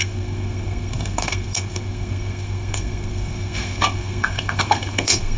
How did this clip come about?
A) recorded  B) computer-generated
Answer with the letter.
B